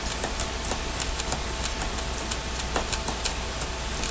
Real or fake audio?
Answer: real